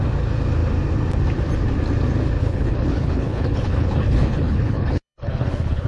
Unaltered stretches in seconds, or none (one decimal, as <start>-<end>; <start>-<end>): 0.0-2.4